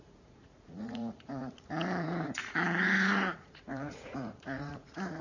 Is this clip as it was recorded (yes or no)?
no